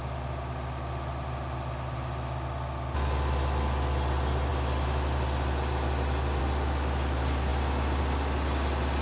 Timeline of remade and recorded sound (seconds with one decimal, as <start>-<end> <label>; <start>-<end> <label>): 0.0-9.0 recorded